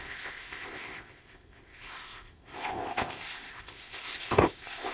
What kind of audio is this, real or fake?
fake